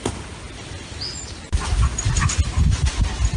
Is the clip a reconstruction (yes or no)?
no